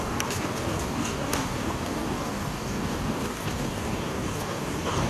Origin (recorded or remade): remade